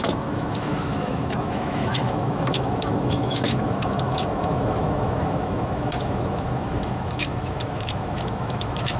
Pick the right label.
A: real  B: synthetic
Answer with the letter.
B